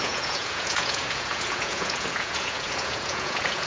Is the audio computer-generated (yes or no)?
yes